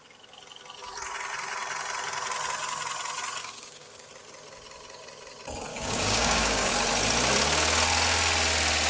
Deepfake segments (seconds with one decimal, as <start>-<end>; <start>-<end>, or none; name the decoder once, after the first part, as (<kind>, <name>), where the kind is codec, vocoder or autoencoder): 3.4-4.1 (codec, DAC); 5.7-6.7